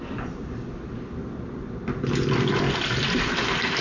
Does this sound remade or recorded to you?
recorded